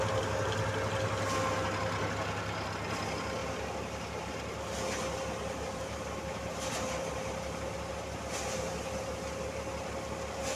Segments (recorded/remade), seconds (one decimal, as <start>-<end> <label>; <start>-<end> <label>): 0.0-3.4 recorded; 3.4-7.9 remade; 7.9-10.6 recorded